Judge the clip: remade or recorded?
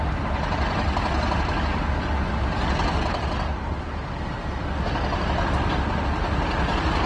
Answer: recorded